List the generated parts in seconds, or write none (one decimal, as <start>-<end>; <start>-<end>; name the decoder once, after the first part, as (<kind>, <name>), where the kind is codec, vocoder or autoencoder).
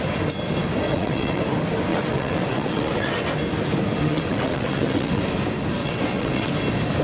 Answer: 0.9-1.4 (vocoder, WaveNeXt); 1.9-3.2; 4.0-5.2; 5.8-6.5